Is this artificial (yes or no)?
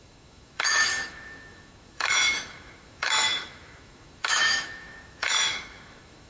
yes